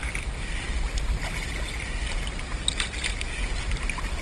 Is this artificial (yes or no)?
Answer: no